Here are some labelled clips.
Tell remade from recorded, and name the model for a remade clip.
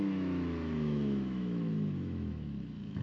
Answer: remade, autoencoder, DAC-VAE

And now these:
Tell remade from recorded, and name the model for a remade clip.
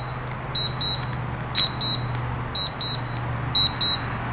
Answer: recorded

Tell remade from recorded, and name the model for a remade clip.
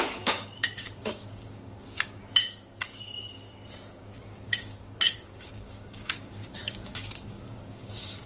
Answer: remade, codec, DAC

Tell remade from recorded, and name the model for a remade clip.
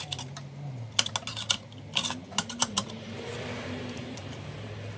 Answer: recorded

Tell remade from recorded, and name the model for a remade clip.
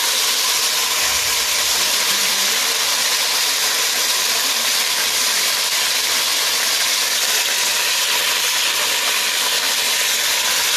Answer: recorded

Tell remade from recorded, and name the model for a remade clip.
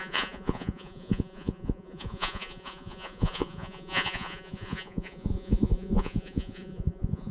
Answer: remade, vocoder, Vocos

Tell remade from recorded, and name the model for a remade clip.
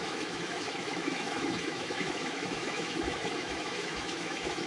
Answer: remade, autoencoder, DAC-VAE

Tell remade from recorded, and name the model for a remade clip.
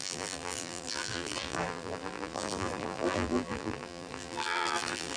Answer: remade, vocoder, BigVGAN v2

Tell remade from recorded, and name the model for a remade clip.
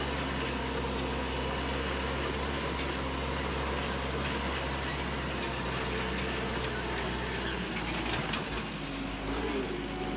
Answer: recorded